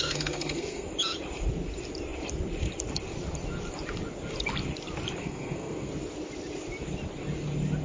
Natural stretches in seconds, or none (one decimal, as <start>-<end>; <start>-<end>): 0.9-5.2; 5.9-7.8